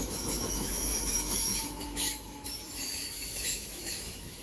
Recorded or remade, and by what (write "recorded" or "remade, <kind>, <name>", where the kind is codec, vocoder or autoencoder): remade, autoencoder, DAC-VAE